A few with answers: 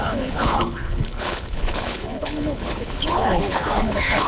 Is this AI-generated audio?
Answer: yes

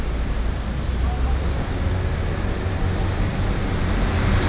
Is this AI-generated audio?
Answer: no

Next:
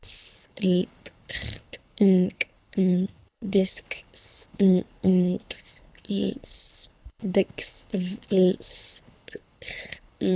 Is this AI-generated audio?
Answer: yes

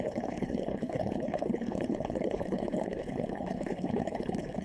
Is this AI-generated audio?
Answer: yes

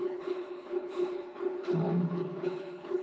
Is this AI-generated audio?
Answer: yes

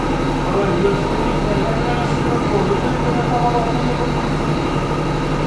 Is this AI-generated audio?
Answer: no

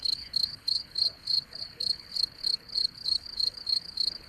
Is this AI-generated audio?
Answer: yes